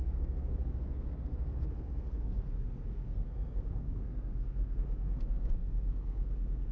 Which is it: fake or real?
fake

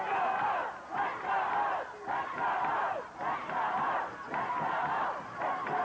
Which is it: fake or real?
real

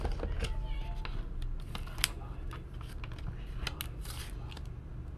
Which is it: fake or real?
real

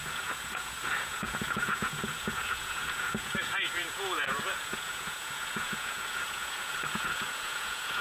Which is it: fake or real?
fake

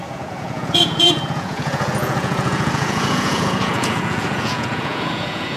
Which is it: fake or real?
fake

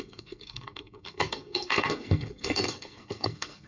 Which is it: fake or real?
fake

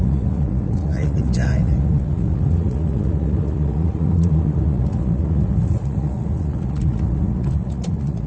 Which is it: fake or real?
fake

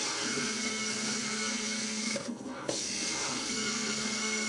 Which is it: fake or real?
fake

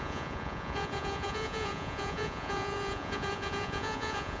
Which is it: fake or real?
fake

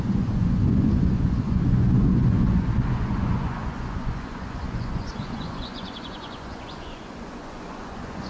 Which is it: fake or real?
fake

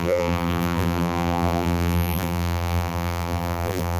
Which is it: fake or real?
fake